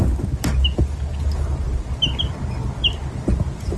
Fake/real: real